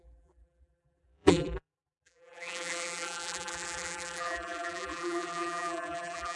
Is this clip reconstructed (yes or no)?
yes